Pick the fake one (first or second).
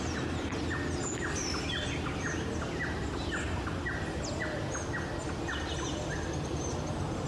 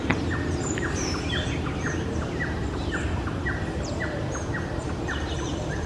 second